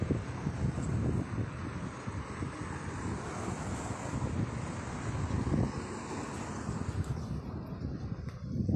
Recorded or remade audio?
recorded